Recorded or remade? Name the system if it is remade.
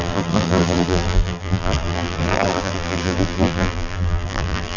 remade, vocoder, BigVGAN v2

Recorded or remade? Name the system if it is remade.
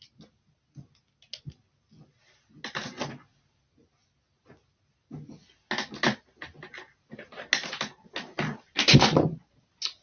recorded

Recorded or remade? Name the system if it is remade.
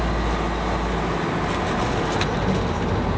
recorded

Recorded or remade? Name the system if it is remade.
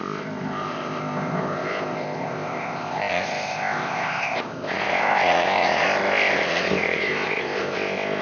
remade, codec, ZipCodec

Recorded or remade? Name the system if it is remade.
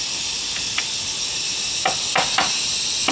recorded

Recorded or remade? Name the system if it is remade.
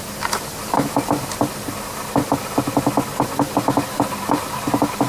remade, vocoder, BigVGAN v2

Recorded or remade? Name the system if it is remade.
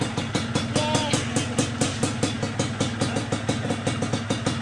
recorded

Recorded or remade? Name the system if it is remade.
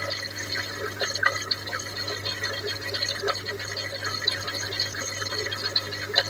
recorded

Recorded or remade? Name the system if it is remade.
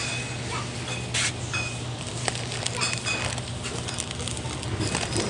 recorded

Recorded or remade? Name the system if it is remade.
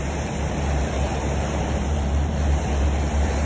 remade, vocoder, BigVGAN v2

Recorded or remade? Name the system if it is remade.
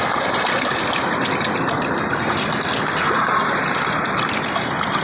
recorded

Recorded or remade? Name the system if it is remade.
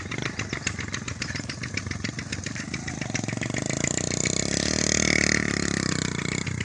recorded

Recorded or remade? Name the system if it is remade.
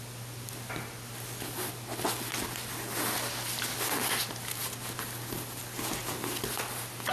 recorded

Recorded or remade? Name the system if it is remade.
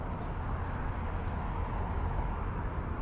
recorded